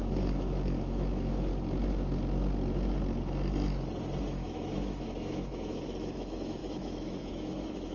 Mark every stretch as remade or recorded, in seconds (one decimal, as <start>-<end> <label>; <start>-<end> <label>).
0.0-1.5 remade; 1.5-4.2 recorded; 4.2-7.9 remade